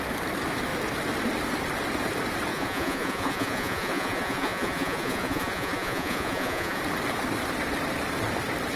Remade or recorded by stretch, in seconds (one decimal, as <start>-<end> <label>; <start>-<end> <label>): 0.0-2.5 recorded; 2.5-6.8 remade; 6.8-8.8 recorded